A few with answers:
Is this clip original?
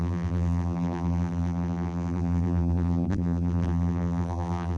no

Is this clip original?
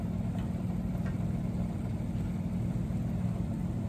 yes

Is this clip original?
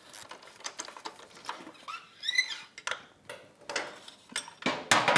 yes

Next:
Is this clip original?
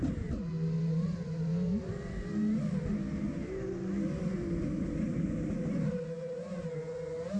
yes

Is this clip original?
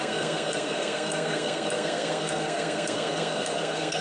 no